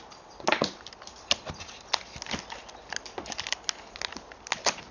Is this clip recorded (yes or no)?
yes